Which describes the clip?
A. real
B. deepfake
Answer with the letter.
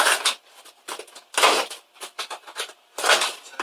A